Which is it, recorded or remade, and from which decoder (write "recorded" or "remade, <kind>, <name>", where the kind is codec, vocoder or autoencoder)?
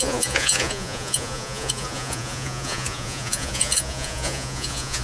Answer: remade, vocoder, Vocos